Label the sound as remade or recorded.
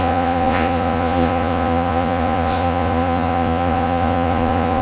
remade